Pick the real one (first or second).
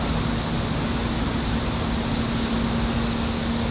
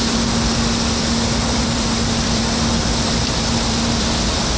first